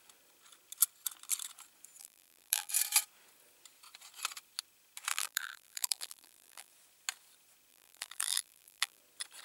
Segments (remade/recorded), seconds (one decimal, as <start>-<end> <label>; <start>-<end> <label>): 0.0-2.0 recorded; 2.0-2.7 remade; 2.7-5.1 recorded; 5.1-6.7 remade; 6.7-7.7 recorded; 7.7-9.0 remade; 9.0-9.4 recorded